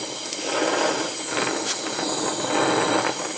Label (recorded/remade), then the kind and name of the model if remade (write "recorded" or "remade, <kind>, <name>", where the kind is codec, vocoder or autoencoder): recorded